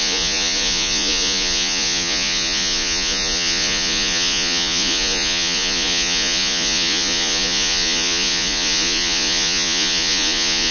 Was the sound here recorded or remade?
remade